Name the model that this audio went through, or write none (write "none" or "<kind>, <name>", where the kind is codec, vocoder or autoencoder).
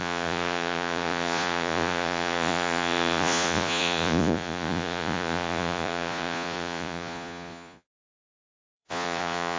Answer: vocoder, Vocos